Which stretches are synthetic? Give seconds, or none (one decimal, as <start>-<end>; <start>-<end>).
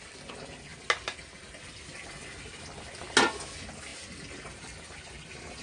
none